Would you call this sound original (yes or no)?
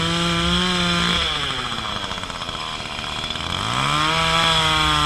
yes